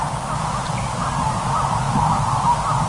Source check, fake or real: real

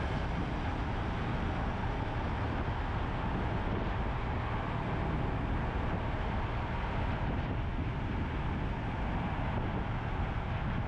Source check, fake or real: real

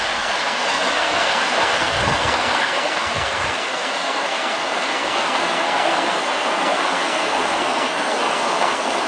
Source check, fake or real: fake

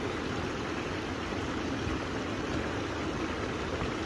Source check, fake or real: real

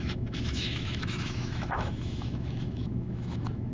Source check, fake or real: fake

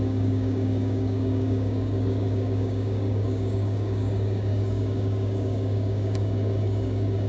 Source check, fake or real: fake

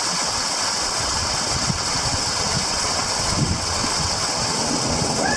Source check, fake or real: fake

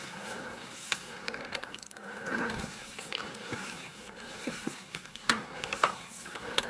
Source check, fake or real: fake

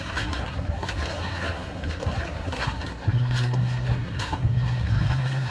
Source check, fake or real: fake